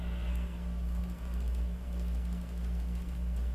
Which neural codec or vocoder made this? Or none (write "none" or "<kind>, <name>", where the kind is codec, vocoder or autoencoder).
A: codec, SNAC